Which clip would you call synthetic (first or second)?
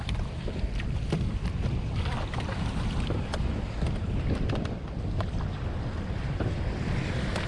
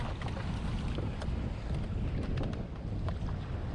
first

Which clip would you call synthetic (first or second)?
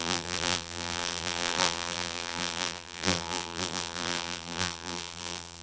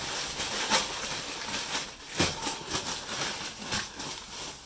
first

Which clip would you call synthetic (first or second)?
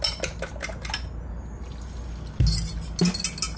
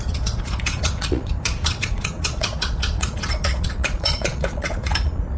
second